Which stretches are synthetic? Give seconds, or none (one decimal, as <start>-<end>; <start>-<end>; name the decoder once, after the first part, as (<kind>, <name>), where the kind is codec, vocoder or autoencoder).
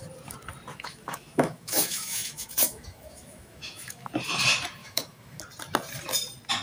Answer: 0.7-4.1 (autoencoder, DAC-VAE); 4.8-5.4